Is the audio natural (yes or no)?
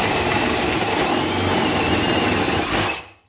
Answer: yes